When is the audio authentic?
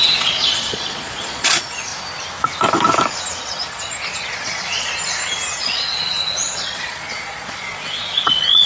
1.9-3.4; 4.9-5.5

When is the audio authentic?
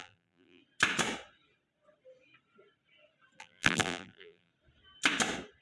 0.6-3.4; 4.5-5.6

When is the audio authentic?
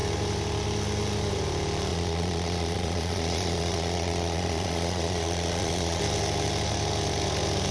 0.0-1.9; 6.0-7.7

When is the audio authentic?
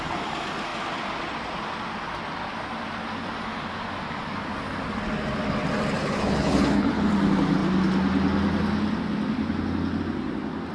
0.0-6.0; 7.1-10.7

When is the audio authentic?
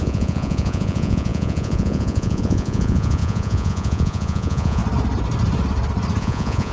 4.8-6.2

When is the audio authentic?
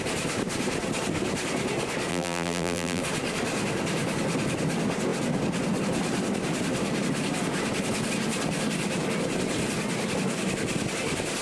0.0-2.1; 3.0-11.4